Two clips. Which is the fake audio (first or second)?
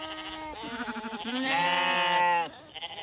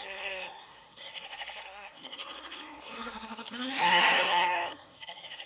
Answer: second